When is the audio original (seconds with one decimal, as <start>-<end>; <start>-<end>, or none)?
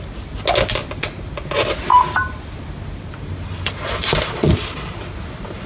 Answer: 0.0-5.7